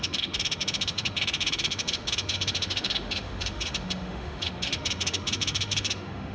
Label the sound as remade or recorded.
remade